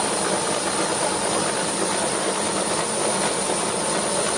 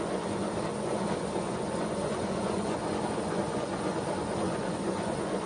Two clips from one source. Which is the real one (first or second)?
first